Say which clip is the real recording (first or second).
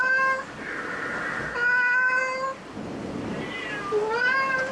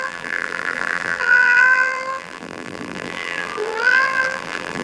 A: first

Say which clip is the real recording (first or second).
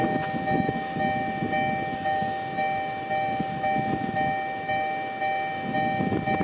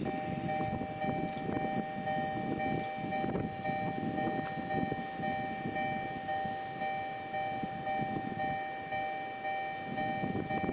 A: second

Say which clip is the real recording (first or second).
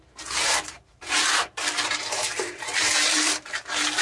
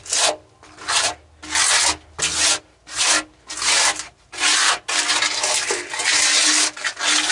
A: second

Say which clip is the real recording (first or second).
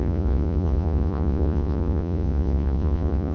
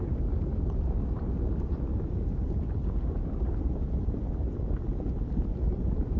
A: second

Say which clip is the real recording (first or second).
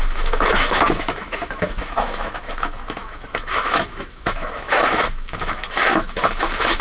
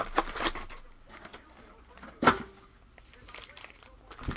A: second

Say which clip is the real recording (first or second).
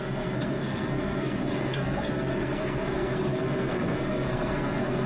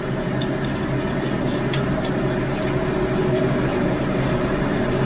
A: second